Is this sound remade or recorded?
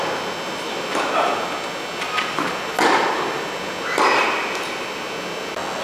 recorded